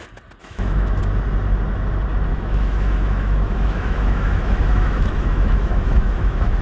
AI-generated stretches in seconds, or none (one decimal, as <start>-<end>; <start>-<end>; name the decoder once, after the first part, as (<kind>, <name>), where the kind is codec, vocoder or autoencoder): 0.4-1.0 (autoencoder, DAC-VAE); 2.3-6.6